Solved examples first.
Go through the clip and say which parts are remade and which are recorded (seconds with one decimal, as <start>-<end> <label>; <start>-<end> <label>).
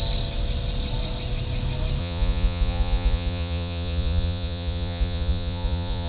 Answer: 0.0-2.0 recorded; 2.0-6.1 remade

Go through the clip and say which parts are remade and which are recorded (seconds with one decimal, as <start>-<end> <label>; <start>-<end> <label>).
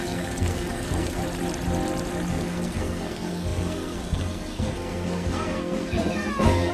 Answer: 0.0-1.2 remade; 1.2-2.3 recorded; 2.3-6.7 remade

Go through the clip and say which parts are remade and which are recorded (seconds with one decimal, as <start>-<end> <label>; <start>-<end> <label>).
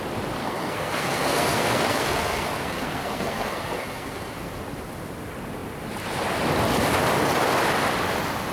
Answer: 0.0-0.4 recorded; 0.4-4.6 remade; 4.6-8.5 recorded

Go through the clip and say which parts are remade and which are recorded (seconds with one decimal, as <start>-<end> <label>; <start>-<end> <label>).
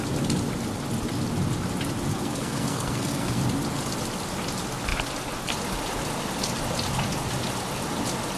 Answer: 0.0-2.1 recorded; 2.1-3.4 remade; 3.4-8.4 recorded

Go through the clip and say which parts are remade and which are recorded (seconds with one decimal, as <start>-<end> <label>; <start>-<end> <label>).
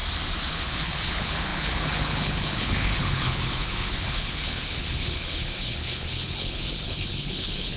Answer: 0.0-0.5 recorded; 0.5-7.8 remade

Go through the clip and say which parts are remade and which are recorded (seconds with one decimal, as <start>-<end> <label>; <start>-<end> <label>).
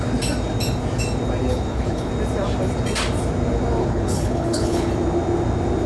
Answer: 0.0-1.5 recorded; 1.5-2.1 remade; 2.1-3.8 recorded; 3.8-4.9 remade; 4.9-5.9 recorded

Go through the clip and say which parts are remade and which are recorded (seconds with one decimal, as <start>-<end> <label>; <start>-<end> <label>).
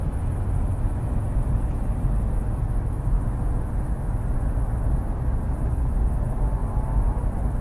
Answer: 0.0-6.6 recorded; 6.6-7.6 remade